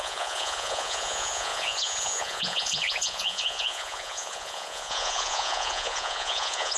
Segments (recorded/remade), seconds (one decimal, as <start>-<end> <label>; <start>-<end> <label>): 0.0-6.8 remade